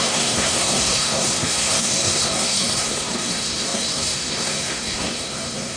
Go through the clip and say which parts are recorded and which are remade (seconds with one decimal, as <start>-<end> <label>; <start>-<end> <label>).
0.0-5.8 remade